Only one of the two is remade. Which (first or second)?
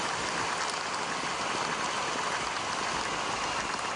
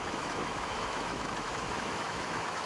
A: second